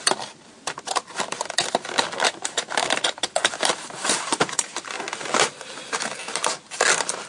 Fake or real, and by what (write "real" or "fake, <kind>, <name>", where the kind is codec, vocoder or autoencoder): real